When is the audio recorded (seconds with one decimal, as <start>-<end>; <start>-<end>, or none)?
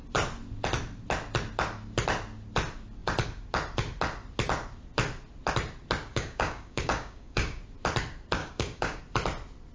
0.0-6.1; 7.6-8.4; 9.0-9.7